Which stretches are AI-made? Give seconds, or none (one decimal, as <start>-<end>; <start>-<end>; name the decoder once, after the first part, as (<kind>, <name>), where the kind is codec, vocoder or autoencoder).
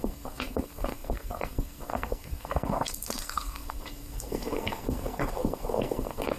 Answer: 0.0-6.4 (codec, SNAC)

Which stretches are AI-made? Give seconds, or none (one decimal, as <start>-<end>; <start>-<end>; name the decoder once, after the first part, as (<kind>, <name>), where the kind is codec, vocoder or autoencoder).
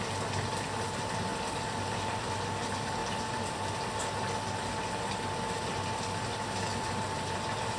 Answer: none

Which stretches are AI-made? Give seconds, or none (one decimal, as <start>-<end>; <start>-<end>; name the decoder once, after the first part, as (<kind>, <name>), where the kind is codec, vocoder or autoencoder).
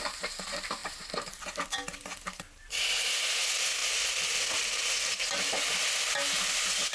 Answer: none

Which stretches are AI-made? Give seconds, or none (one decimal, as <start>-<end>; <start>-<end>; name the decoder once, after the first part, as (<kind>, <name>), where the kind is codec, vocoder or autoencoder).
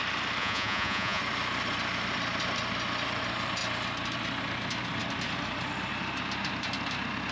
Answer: 0.4-1.2 (vocoder, Vocos)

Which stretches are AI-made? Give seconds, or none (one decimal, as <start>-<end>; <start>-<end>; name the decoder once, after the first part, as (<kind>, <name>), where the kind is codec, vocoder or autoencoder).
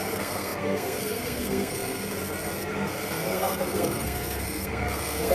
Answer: 0.0-5.3 (codec, SNAC)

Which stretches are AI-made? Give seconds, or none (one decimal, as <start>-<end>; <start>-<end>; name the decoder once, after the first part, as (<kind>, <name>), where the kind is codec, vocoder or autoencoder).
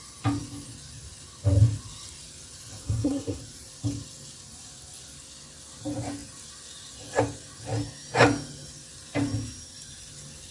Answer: 2.8-3.4 (codec, SNAC)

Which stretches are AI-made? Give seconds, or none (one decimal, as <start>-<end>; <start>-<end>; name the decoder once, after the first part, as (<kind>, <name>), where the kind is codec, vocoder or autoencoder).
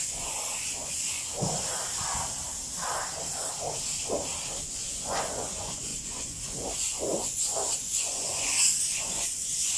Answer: 0.0-1.8 (vocoder, Vocos); 4.7-9.8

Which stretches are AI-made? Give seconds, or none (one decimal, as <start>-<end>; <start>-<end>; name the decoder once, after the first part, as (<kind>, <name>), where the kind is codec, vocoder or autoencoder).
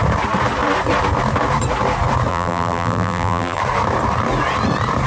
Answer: 2.3-3.6 (vocoder, BigVGAN v2)